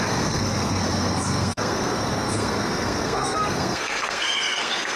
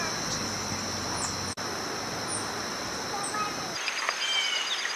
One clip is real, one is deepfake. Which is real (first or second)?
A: second